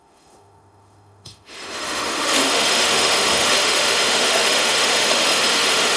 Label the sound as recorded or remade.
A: remade